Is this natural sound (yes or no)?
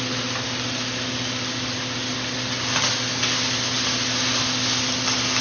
yes